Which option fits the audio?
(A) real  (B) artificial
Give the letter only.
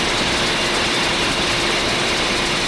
A